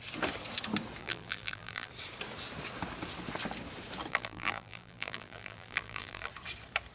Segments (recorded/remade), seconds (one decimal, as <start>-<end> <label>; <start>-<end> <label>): 0.0-1.0 recorded; 1.0-1.9 remade; 1.9-4.1 recorded; 4.1-6.3 remade; 6.3-6.9 recorded